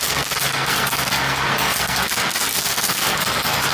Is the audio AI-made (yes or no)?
yes